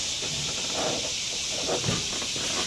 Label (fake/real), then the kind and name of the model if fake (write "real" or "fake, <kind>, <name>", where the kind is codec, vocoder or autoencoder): real